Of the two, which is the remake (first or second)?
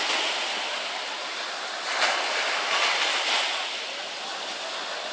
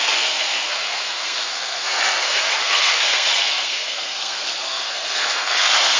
second